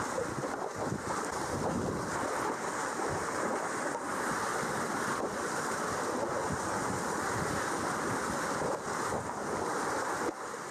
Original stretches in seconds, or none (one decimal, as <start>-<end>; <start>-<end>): 0.0-4.5; 7.4-10.7